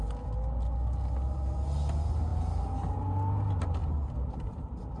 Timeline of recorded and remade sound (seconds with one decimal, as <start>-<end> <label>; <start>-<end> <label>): 0.0-5.0 recorded